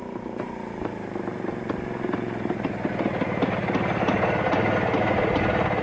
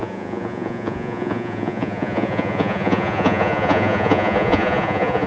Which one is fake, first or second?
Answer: second